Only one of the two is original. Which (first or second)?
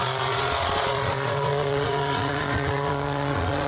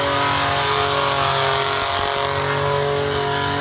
second